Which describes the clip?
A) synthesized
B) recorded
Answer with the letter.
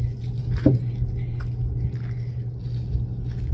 B